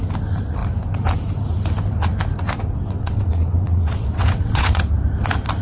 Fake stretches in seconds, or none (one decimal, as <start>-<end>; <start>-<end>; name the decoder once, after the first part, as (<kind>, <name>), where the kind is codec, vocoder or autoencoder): 2.8-4.8 (vocoder, WaveNeXt)